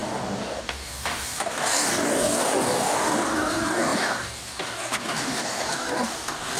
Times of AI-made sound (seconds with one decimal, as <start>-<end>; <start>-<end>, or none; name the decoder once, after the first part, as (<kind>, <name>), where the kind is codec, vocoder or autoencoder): 0.0-6.6 (codec, DAC)